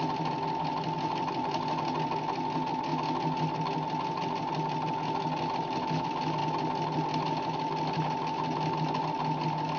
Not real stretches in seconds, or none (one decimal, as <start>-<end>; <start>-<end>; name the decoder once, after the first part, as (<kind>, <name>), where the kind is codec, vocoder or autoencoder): none